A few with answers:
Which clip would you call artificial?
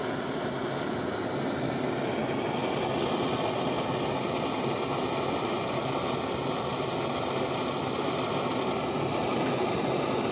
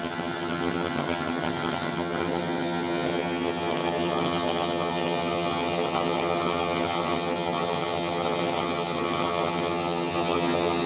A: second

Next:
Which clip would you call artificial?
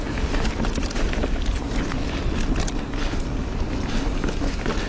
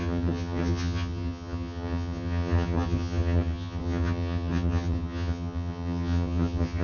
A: second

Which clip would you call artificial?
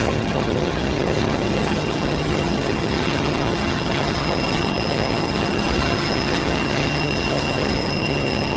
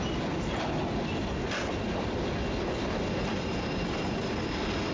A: first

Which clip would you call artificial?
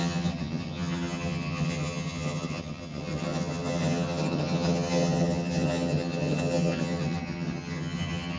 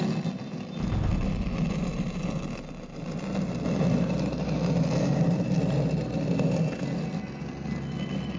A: first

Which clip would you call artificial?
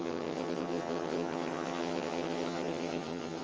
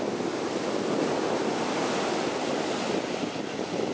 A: first